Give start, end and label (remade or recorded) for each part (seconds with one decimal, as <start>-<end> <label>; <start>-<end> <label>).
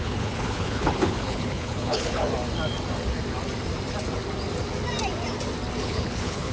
0.0-2.3 remade; 2.3-5.8 recorded; 5.8-6.5 remade